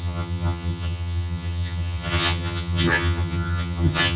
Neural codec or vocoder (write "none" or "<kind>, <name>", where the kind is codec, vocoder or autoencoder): vocoder, HiFi-GAN